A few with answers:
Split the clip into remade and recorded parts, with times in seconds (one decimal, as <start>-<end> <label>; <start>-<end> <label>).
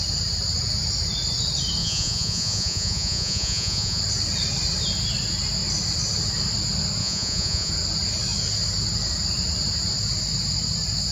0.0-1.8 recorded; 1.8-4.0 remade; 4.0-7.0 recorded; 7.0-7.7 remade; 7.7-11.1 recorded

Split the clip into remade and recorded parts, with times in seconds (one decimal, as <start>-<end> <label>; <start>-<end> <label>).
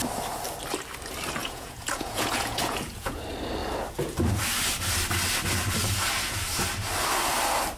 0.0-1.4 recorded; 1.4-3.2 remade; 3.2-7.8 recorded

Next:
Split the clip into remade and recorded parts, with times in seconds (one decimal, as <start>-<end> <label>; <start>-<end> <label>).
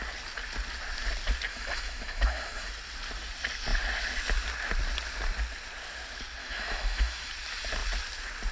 0.0-1.5 recorded; 1.5-2.7 remade; 2.7-6.4 recorded; 6.4-7.3 remade; 7.3-8.5 recorded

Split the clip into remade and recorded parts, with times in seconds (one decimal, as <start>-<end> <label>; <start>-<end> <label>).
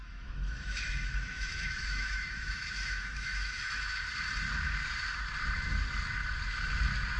0.0-4.0 remade; 4.0-7.2 recorded